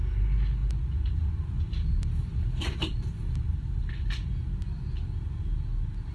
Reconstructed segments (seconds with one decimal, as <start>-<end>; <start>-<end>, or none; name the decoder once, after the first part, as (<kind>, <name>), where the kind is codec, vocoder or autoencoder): 0.6-4.3 (vocoder, BigVGAN v2)